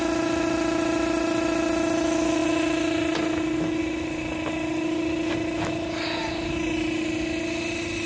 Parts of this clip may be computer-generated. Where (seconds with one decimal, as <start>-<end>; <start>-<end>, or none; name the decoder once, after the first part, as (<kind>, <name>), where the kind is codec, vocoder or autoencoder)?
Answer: none